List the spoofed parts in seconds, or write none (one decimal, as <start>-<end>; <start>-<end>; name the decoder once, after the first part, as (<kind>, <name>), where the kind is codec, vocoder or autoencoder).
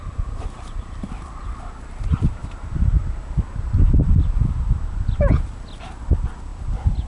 none